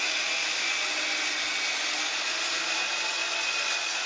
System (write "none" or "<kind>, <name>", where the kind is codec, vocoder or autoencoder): none